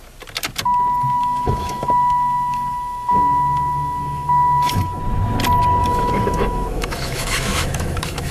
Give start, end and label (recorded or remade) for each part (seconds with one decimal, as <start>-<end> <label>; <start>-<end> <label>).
0.0-1.2 recorded; 1.2-5.0 remade; 5.0-5.8 recorded; 5.8-8.3 remade